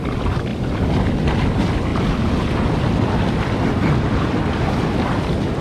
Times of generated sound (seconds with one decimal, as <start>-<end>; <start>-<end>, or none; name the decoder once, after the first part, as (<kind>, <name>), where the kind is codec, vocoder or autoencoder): none